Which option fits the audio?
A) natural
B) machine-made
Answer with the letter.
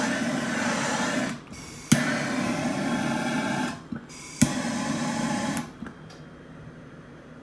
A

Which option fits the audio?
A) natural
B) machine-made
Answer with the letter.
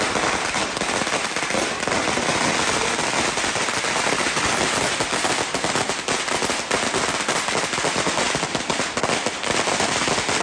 A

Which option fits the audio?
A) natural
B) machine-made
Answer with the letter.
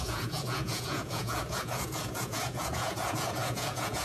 B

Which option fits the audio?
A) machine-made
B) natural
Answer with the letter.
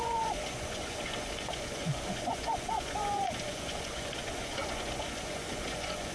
A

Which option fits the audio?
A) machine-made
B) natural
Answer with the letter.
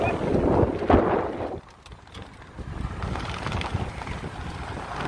B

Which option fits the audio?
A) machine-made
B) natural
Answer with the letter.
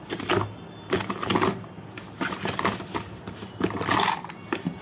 B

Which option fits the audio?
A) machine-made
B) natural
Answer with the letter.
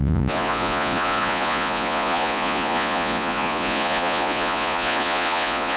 A